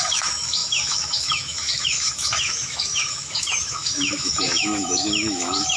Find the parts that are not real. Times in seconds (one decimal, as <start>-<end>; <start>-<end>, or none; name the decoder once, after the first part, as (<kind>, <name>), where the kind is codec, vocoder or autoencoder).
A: 0.0-5.8 (autoencoder, DAC-VAE)